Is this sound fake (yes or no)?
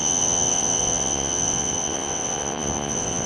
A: yes